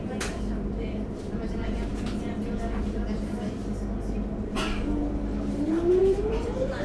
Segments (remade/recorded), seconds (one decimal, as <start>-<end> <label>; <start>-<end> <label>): 0.0-1.9 remade; 1.9-2.8 recorded; 2.8-3.6 remade; 3.6-6.0 recorded; 6.0-6.8 remade